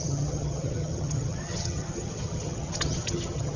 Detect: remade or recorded remade